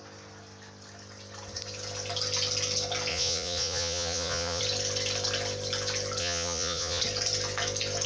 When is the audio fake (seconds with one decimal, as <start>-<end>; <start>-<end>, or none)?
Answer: 3.1-4.6; 6.2-7.0